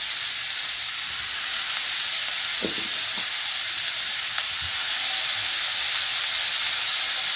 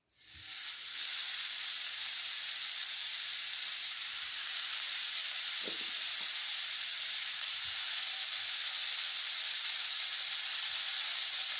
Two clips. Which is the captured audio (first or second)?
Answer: first